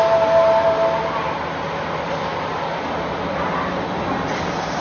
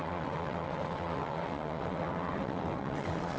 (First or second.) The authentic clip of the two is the first